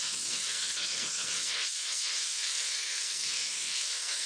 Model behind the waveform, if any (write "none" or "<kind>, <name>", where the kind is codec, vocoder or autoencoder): codec, SNAC